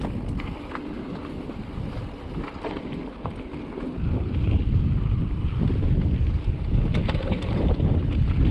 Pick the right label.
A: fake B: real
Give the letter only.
B